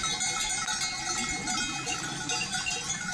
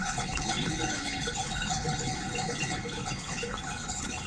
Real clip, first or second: first